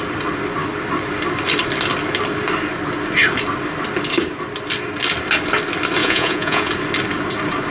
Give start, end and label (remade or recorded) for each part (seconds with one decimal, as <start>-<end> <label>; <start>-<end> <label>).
0.0-6.0 recorded; 6.0-6.7 remade; 6.7-7.7 recorded